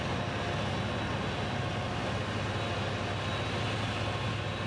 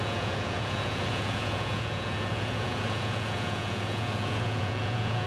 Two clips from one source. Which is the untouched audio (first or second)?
first